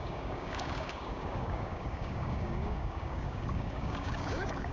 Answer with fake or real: fake